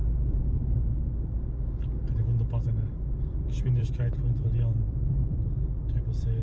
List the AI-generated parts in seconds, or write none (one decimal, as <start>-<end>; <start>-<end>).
3.2-6.4